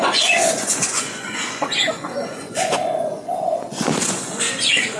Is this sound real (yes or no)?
no